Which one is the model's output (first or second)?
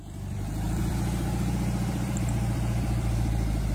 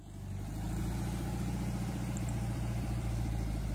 first